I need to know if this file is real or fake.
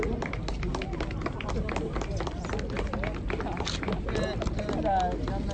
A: real